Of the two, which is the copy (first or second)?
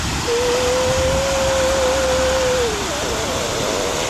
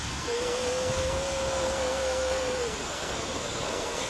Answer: second